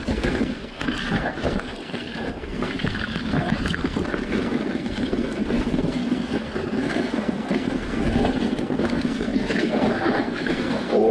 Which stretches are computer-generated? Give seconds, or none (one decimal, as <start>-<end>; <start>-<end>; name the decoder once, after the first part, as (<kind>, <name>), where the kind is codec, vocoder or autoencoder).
0.0-11.1 (codec, SNAC)